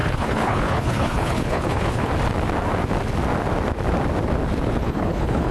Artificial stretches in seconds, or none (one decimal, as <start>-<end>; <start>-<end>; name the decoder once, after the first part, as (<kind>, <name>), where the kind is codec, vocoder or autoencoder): 0.0-2.1 (codec, HILCodec); 4.8-5.5